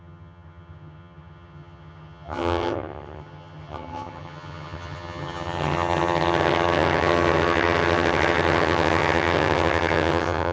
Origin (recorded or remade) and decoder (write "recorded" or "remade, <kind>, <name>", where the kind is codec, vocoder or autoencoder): remade, vocoder, HiFi-GAN